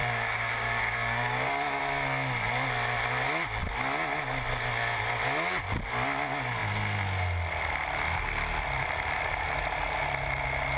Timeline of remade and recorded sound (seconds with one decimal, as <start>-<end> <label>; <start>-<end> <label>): 0.0-1.8 remade; 1.8-10.8 recorded